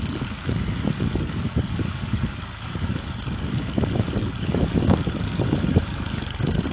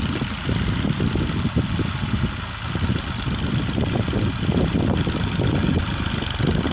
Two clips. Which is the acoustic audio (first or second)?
second